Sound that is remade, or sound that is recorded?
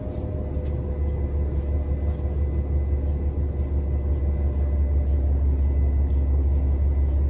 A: recorded